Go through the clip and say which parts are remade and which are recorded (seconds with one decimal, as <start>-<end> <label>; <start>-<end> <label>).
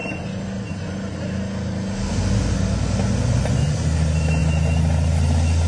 0.0-5.7 recorded